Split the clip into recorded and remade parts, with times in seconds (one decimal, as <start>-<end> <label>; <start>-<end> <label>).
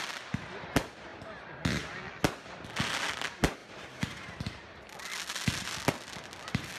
0.0-6.8 recorded